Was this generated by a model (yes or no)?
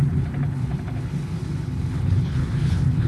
yes